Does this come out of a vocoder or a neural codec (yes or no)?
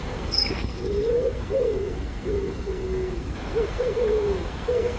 yes